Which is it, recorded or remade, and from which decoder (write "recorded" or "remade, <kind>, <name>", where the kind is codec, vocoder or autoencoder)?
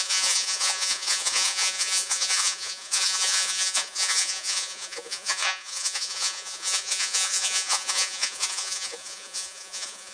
remade, vocoder, Vocos